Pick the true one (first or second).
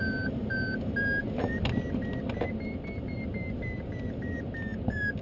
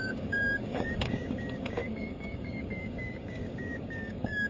first